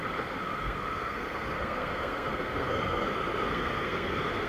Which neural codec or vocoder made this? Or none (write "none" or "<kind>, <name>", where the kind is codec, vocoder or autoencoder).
codec, SNAC